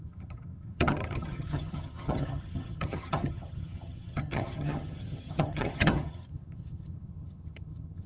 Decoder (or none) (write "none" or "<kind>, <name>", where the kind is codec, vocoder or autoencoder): vocoder, HiFi-GAN